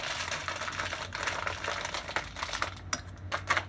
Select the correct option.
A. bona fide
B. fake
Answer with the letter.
A